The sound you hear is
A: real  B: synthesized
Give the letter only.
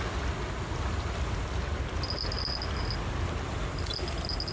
A